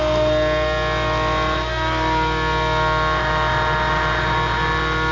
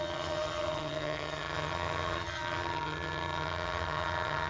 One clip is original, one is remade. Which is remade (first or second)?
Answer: second